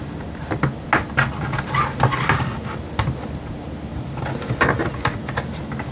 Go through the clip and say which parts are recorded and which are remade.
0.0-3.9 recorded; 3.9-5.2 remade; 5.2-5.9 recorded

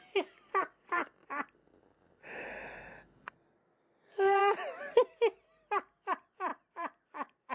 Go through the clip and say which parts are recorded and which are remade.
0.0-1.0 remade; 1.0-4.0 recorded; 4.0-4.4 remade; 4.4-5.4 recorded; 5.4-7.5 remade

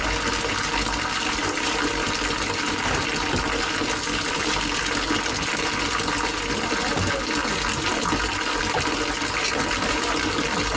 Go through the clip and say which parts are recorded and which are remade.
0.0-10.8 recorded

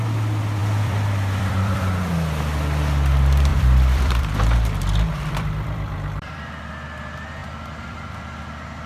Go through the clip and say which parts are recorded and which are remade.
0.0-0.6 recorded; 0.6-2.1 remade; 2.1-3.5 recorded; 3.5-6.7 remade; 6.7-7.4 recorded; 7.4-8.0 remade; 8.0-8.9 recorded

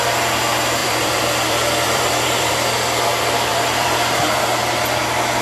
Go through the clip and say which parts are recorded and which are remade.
0.0-0.8 recorded; 0.8-2.5 remade; 2.5-3.5 recorded; 3.5-4.4 remade; 4.4-5.4 recorded

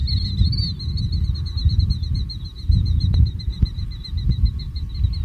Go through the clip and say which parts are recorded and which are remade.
0.0-1.5 recorded; 1.5-4.5 remade; 4.5-5.2 recorded

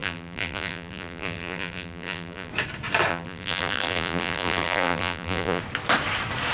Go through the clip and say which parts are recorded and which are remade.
0.0-2.5 remade; 2.5-3.1 recorded; 3.1-5.6 remade; 5.6-6.5 recorded